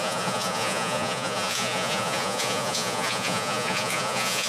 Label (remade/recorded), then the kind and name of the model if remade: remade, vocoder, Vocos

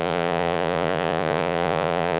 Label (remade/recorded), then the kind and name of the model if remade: remade, vocoder, Vocos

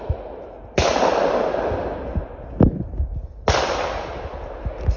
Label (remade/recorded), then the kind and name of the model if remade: recorded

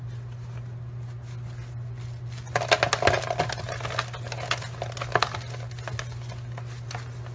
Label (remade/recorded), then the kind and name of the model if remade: recorded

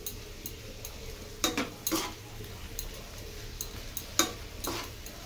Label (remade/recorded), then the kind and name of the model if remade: recorded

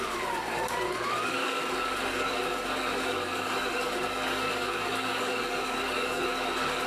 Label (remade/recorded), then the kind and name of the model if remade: remade, codec, DAC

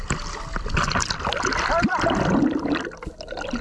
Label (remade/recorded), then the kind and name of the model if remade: recorded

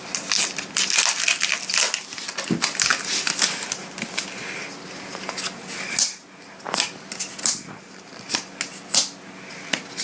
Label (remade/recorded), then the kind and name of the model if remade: recorded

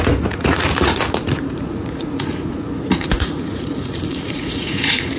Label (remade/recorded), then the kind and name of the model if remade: remade, vocoder, Vocos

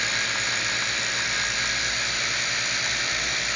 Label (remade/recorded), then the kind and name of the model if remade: recorded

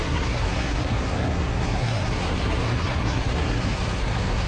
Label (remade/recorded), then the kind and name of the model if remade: remade, codec, SNAC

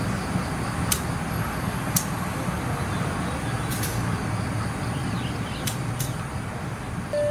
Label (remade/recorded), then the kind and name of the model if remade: recorded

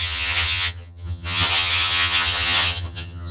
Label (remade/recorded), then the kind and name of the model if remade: remade, vocoder, HiFi-GAN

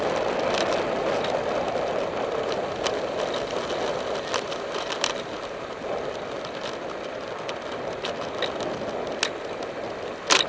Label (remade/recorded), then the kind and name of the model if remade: recorded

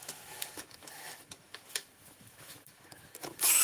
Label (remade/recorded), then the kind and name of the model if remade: remade, autoencoder, DAC-VAE